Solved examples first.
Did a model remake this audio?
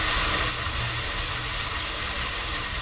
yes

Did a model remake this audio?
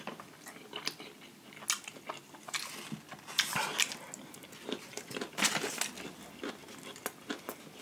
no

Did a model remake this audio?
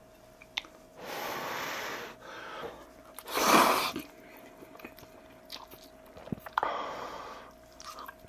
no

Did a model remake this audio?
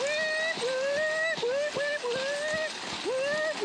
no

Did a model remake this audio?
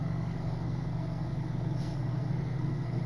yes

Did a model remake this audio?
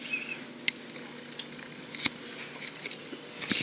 no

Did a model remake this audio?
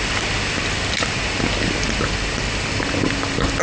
no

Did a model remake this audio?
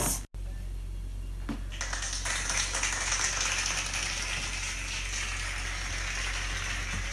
no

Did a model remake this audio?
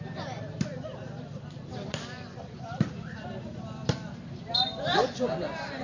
yes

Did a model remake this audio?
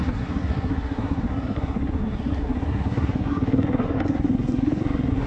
yes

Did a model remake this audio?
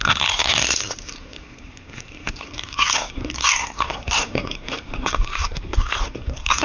yes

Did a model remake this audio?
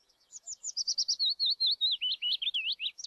yes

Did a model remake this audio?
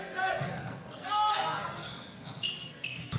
yes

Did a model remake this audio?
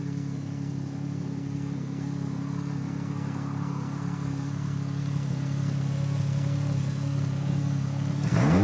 yes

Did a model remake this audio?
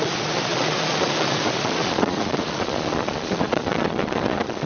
yes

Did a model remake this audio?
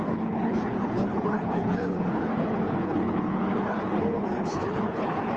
yes